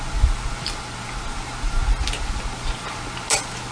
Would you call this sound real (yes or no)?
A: yes